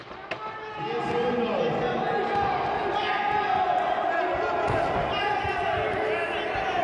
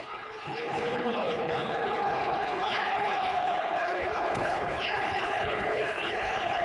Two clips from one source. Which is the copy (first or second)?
second